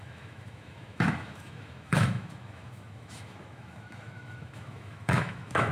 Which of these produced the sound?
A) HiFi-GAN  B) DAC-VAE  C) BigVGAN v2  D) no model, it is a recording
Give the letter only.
B